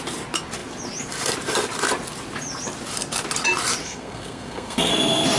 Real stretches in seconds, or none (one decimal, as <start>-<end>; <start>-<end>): 0.0-3.8; 4.9-5.4